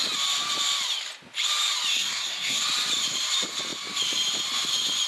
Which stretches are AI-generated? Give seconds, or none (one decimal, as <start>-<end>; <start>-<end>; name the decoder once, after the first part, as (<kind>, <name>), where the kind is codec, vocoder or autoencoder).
1.9-2.6 (codec, SNAC)